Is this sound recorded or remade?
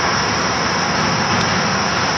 recorded